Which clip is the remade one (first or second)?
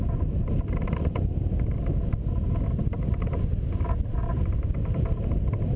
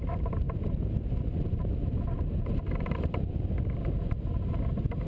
second